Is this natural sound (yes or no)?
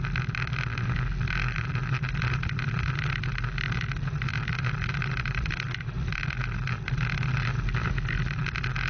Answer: yes